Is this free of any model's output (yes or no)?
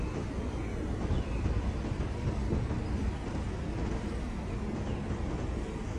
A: yes